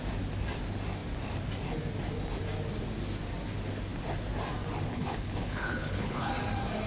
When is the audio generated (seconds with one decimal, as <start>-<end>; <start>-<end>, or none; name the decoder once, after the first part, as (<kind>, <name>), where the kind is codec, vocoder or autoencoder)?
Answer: 4.9-6.3 (codec, HILCodec)